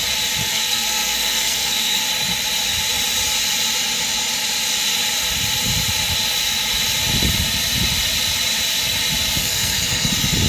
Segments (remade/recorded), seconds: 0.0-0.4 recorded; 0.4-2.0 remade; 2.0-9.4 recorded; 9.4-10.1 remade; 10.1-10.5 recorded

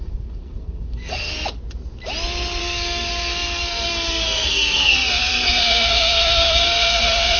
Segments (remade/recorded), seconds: 0.0-1.3 remade; 1.3-2.6 recorded; 2.6-7.4 remade

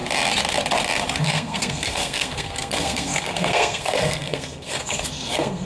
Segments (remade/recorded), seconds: 0.0-1.2 recorded; 1.2-5.6 remade